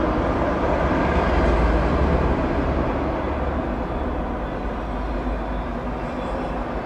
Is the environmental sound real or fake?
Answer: real